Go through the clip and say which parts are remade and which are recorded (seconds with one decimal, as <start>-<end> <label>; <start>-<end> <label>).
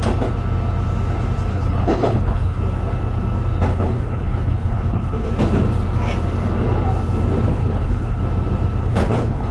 0.0-1.5 recorded; 1.5-2.6 remade; 2.6-3.7 recorded; 3.7-5.3 remade; 5.3-7.5 recorded; 7.5-8.2 remade; 8.2-8.8 recorded; 8.8-9.5 remade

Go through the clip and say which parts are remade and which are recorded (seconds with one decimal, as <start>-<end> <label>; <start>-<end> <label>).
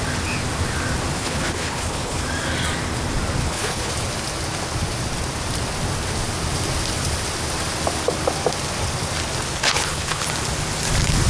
0.0-1.2 recorded; 1.2-2.2 remade; 2.2-3.4 recorded; 3.4-3.9 remade; 3.9-9.6 recorded; 9.6-10.2 remade; 10.2-11.3 recorded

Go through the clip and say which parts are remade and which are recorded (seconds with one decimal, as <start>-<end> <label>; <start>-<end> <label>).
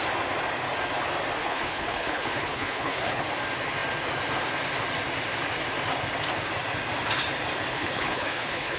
0.0-1.4 recorded; 1.4-3.2 remade; 3.2-7.7 recorded; 7.7-8.8 remade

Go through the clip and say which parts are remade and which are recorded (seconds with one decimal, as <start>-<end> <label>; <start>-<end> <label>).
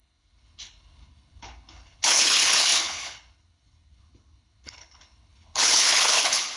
0.0-6.6 remade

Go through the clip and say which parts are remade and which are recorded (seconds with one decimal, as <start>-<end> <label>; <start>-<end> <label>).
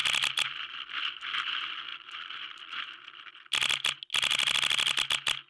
0.0-5.5 recorded